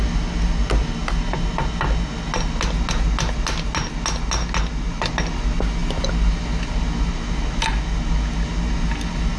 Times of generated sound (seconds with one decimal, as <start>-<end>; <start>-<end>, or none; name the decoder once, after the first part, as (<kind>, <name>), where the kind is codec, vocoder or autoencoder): none